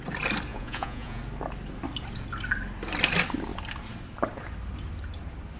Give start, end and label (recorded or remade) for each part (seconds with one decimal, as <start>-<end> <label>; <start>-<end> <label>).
0.0-0.5 recorded; 0.5-1.2 remade; 1.2-5.6 recorded